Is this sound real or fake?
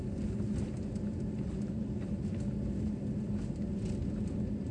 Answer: real